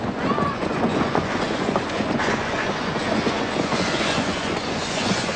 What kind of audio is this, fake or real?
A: fake